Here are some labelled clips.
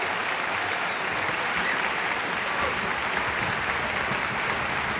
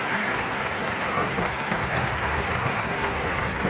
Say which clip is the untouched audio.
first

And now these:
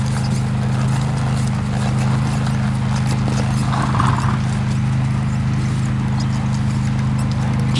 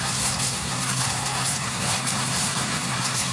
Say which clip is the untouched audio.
first